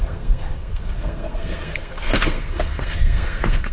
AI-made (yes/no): yes